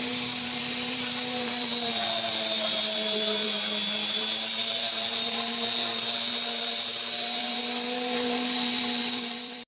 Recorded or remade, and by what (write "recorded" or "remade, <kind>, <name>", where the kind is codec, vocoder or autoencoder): remade, vocoder, BigVGAN v2